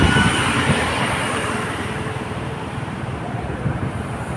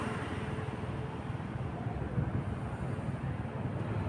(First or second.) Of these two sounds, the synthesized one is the first